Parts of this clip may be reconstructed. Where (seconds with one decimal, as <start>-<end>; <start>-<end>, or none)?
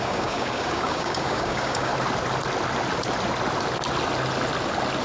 0.0-1.9